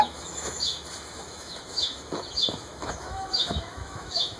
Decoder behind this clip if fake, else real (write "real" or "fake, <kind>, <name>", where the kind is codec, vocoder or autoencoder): fake, autoencoder, DAC-VAE